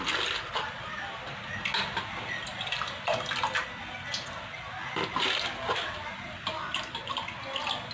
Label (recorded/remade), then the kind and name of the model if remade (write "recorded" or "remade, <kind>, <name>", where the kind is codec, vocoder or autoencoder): recorded